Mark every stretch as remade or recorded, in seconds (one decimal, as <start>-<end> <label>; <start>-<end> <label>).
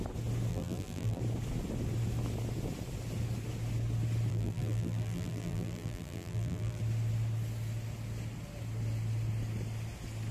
0.0-0.5 recorded; 0.5-1.2 remade; 1.2-4.3 recorded; 4.3-6.8 remade; 6.8-10.3 recorded